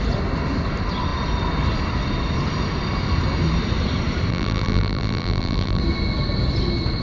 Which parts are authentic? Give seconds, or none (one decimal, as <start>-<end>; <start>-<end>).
0.0-4.3; 5.8-7.0